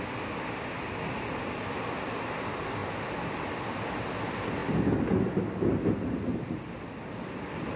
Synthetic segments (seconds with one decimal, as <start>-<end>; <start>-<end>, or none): none

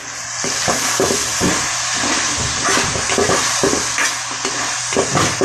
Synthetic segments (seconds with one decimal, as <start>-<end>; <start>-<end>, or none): none

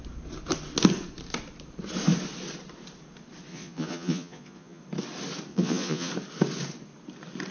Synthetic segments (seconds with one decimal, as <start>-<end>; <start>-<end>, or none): 3.5-4.8; 5.5-6.1

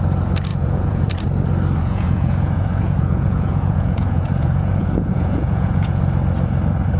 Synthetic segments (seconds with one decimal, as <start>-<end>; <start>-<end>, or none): 0.5-1.1; 1.8-6.0

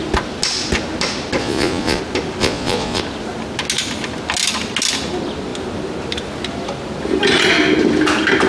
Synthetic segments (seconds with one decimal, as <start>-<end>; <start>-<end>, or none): 1.4-2.0; 2.4-3.0